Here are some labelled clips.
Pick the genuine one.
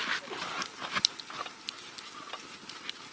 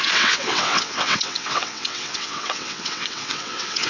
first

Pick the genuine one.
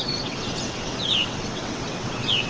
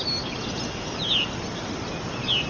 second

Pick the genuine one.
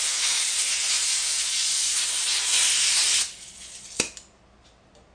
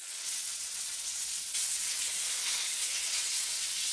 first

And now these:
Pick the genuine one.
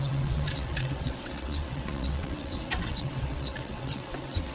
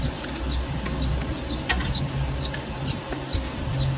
second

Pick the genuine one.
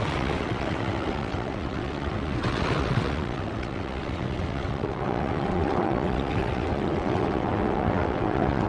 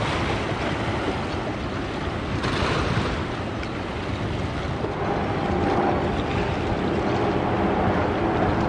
second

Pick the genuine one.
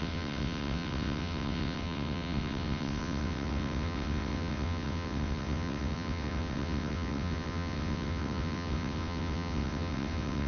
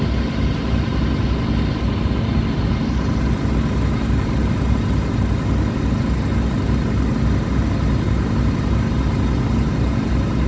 second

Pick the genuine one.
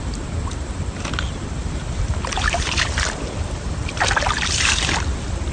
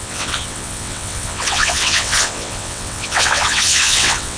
first